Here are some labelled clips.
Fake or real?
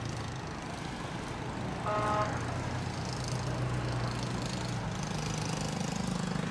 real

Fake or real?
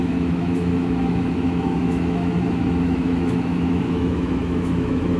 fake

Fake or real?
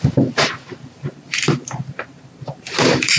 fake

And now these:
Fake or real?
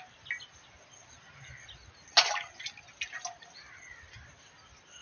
real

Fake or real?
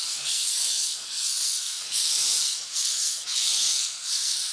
fake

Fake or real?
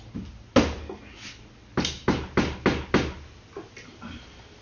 real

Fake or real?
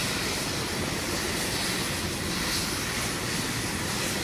real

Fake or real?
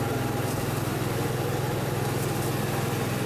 real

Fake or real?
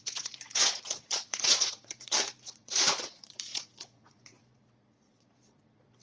fake